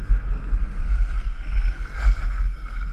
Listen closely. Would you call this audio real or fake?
fake